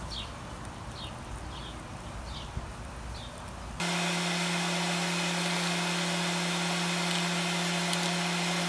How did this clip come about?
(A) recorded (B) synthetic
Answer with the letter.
A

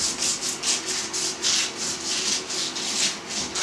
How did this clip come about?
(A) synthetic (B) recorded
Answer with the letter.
B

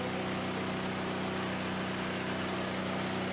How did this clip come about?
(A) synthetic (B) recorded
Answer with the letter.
B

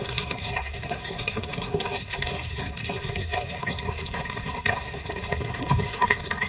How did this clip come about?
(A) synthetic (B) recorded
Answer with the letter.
A